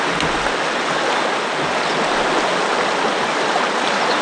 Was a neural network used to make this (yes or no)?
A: no